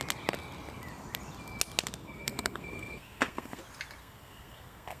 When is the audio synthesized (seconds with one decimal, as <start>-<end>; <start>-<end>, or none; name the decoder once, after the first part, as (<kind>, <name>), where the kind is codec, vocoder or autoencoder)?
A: 2.0-3.6 (codec, SNAC); 4.0-5.0